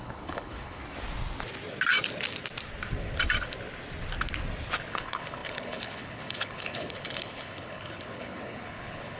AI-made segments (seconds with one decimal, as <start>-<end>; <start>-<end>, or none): 0.0-0.8; 4.9-9.2